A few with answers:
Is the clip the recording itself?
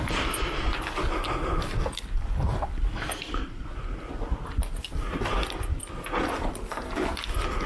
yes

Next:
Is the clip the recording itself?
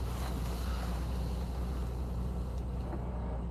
yes